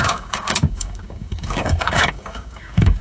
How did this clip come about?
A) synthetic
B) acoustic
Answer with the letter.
A